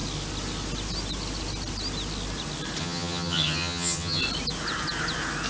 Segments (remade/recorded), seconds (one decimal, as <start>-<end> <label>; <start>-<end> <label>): 0.0-2.8 recorded; 2.8-4.2 remade; 4.2-5.5 recorded